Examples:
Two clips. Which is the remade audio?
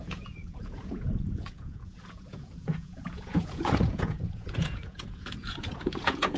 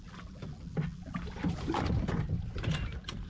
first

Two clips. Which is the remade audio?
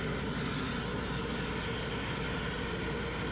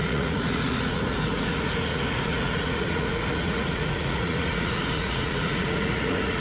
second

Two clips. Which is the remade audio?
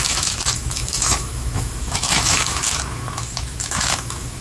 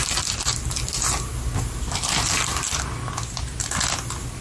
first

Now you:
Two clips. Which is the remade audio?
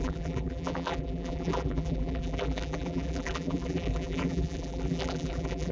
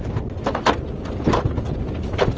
first